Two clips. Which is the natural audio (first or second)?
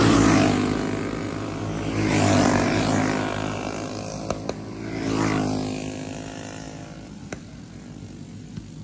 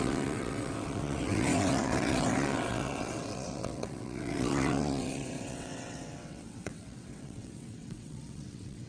first